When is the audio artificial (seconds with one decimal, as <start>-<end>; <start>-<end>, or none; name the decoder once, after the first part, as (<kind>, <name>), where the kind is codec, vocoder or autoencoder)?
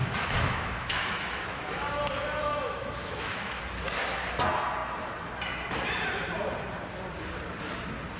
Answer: 0.0-2.0 (autoencoder, DAC-VAE); 2.5-3.6